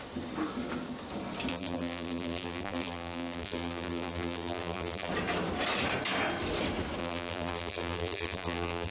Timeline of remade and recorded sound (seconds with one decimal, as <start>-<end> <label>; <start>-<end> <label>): 0.0-1.5 recorded; 1.5-5.1 remade; 5.1-7.0 recorded; 7.0-8.9 remade